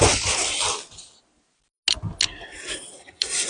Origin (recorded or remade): recorded